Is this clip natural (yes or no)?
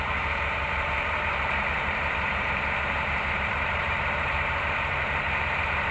no